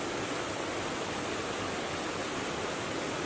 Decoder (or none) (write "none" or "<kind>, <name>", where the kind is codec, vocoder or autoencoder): none